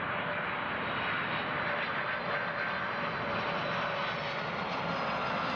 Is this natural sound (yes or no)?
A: yes